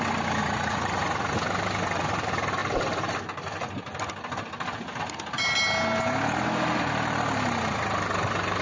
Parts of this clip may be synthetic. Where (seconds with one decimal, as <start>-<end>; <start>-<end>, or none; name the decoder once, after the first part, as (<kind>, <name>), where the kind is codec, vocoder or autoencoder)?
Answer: 0.4-1.3 (vocoder, Vocos)